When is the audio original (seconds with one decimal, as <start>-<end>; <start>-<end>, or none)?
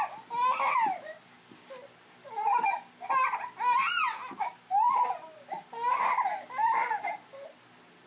0.0-2.2; 2.9-8.1